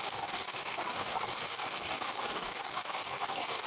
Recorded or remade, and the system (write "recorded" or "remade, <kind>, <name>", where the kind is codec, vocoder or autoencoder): remade, codec, DAC